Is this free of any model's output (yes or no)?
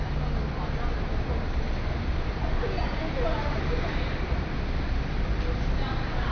yes